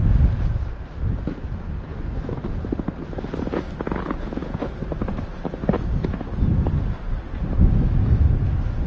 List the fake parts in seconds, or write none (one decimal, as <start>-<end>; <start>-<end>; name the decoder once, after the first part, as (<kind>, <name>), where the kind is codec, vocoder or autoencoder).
1.9-2.4 (vocoder, Vocos)